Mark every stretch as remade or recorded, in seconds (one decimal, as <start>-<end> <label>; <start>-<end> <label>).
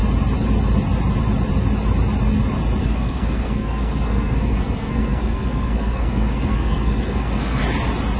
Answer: 0.0-2.8 recorded; 2.8-7.6 remade; 7.6-8.2 recorded